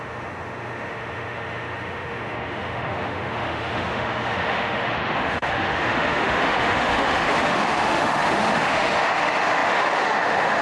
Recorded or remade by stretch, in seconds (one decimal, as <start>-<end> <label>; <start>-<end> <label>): 0.0-10.6 remade